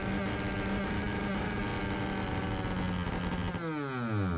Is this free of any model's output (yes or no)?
yes